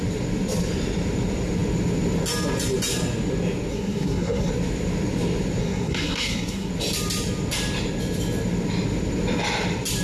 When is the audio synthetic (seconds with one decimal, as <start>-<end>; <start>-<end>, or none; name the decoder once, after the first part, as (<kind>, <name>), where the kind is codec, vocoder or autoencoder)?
3.7-4.5 (codec, SNAC); 5.6-6.7